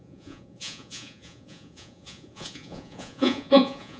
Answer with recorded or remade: remade